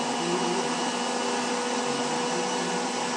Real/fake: real